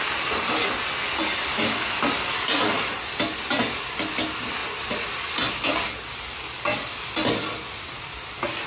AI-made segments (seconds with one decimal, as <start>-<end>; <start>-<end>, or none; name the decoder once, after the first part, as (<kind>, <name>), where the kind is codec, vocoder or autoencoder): 1.5-2.0 (autoencoder, DAC-VAE)